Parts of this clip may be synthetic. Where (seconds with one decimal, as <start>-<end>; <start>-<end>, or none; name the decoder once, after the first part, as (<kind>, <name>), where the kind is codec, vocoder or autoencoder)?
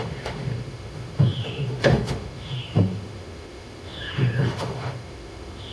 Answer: 0.0-5.7 (autoencoder, DAC-VAE)